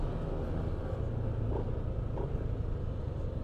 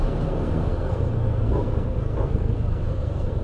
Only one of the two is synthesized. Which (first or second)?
second